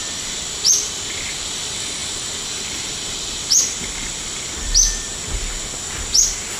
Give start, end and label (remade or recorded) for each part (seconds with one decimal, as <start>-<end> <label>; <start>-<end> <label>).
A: 0.0-2.0 remade; 2.0-2.7 recorded; 2.7-5.1 remade; 5.1-6.6 recorded